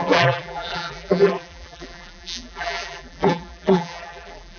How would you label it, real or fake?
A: fake